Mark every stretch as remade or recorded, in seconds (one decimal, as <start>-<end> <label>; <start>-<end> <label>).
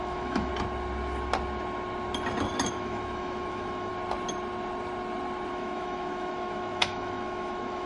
0.0-0.5 remade; 0.5-2.7 recorded; 2.7-3.9 remade; 3.9-5.5 recorded; 5.5-7.9 remade